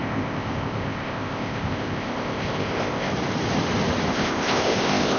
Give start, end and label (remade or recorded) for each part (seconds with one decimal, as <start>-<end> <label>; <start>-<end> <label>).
0.0-3.1 remade; 3.1-4.1 recorded; 4.1-5.2 remade

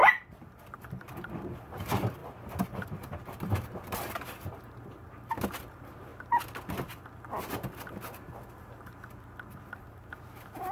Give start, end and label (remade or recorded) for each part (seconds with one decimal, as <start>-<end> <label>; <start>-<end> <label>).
0.0-6.1 remade; 6.1-9.9 recorded; 9.9-10.7 remade